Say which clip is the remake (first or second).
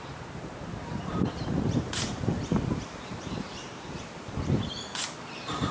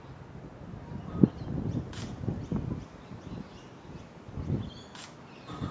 first